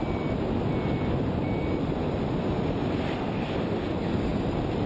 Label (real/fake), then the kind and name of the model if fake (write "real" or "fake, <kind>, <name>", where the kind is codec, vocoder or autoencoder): real